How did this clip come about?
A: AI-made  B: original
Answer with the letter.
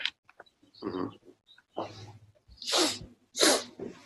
B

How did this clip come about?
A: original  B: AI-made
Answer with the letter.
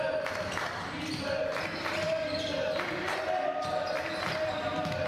A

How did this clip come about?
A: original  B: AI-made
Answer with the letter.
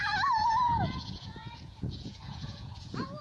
B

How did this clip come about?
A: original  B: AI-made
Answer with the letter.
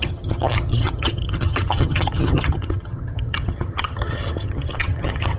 B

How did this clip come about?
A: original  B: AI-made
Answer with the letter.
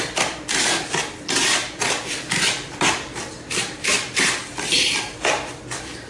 B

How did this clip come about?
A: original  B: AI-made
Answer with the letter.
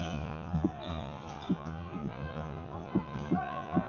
B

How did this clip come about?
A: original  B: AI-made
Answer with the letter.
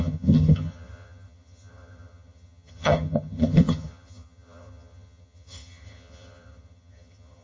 B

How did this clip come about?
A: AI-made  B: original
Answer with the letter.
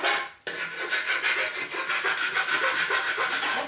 B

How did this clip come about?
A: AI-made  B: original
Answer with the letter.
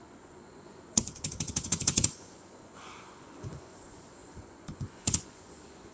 A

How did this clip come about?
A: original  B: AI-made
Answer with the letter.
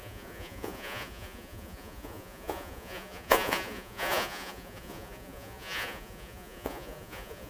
B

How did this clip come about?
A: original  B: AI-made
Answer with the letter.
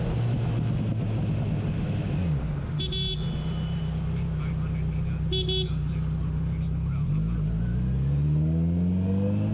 A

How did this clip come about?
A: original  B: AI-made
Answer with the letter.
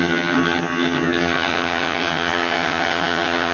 B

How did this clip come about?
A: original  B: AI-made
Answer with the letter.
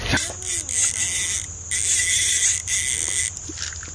A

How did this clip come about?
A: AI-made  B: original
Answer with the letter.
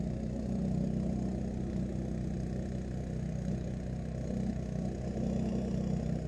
B